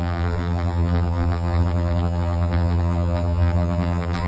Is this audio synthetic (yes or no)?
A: yes